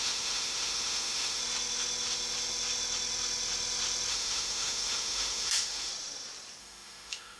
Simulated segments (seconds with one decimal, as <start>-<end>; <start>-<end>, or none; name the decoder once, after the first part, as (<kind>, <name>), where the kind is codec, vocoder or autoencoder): 0.0-1.4 (autoencoder, DAC-VAE); 4.1-5.9; 6.6-7.4